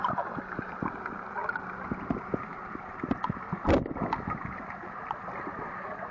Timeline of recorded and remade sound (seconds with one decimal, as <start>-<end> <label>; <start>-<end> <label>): 0.0-6.1 recorded